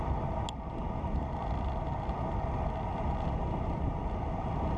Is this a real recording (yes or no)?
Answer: yes